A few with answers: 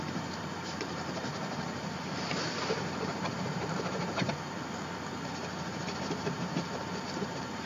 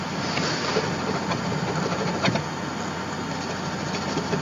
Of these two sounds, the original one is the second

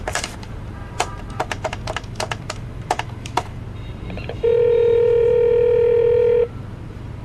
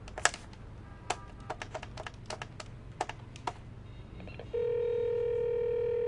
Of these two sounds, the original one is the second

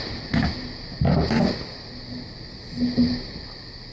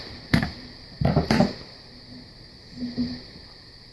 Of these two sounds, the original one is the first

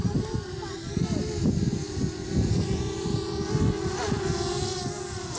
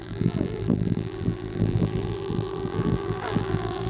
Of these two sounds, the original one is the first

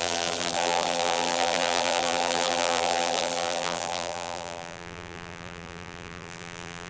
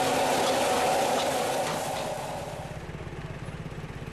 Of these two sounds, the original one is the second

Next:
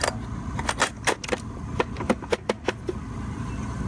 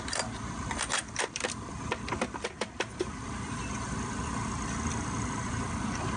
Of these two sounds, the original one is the first